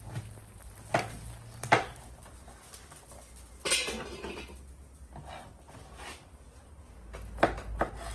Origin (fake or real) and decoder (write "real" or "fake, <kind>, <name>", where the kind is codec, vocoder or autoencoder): real